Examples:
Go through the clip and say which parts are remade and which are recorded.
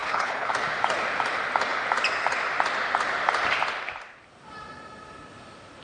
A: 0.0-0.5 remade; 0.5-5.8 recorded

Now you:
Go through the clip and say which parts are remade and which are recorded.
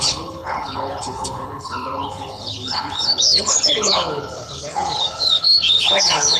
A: 0.0-6.4 remade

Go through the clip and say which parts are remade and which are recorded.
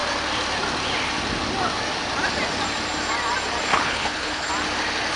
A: 0.0-3.7 recorded; 3.7-4.5 remade; 4.5-5.2 recorded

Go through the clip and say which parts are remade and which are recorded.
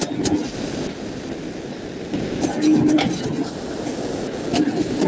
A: 0.0-5.1 recorded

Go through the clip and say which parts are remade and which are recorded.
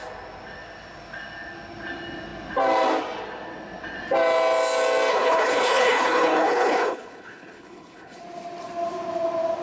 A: 0.0-5.1 recorded; 5.1-8.2 remade; 8.2-9.6 recorded